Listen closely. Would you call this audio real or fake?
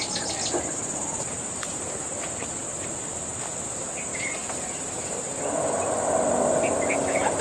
real